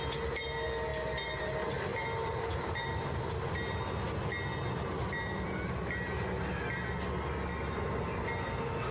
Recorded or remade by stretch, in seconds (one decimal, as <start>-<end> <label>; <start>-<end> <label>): 0.0-1.9 recorded; 1.9-3.9 remade; 3.9-8.9 recorded